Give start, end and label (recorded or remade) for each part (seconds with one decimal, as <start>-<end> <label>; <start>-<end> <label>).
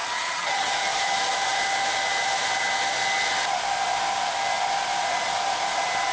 0.0-0.7 remade; 0.7-6.1 recorded